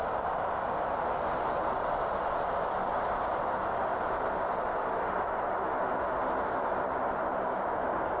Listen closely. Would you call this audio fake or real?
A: real